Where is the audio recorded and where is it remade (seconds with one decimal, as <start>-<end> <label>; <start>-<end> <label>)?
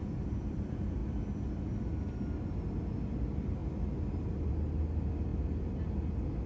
0.0-6.5 recorded